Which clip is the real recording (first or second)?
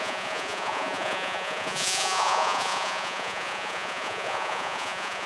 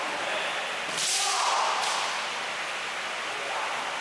second